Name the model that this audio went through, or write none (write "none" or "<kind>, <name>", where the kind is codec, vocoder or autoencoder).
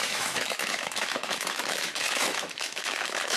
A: autoencoder, DAC-VAE